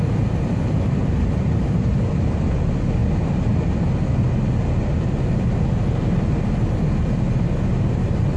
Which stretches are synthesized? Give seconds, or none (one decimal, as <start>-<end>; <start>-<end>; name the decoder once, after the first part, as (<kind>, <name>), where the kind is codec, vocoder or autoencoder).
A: 1.0-2.1 (vocoder, BigVGAN v2)